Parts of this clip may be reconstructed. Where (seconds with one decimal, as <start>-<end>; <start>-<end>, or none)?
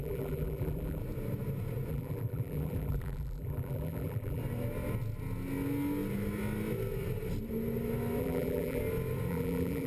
0.0-1.0; 1.9-4.4; 8.2-8.8; 9.3-9.9